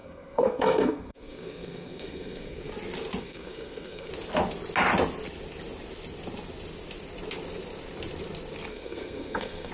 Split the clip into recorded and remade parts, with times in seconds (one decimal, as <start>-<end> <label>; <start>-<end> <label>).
0.0-2.7 remade; 2.7-3.2 recorded; 3.2-4.1 remade; 4.1-8.7 recorded; 8.7-9.7 remade